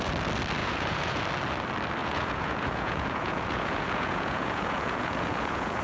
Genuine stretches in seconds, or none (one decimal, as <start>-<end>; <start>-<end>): 0.0-0.6; 1.2-2.0